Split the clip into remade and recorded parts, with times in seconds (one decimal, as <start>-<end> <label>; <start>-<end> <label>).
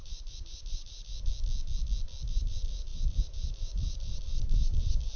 0.0-1.3 remade; 1.3-2.3 recorded; 2.3-5.2 remade